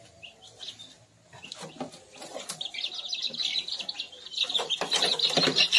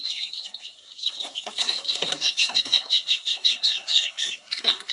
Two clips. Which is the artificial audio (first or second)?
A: second